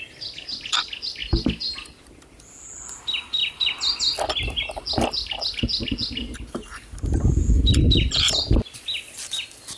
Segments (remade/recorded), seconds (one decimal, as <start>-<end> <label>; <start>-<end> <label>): 0.0-9.8 recorded